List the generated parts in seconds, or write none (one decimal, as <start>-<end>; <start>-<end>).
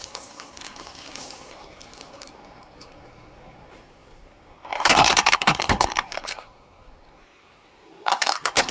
0.0-8.7